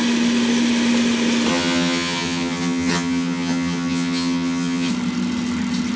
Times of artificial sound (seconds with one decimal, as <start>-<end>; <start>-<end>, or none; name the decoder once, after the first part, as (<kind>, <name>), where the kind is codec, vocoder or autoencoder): 1.5-4.9 (vocoder, HiFi-GAN)